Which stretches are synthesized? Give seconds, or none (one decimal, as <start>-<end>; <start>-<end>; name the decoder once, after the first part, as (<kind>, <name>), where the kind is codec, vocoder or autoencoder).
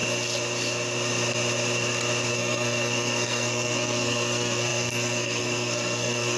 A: 2.3-6.4 (codec, SNAC)